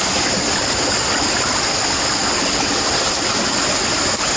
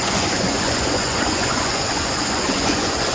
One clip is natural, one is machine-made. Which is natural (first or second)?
first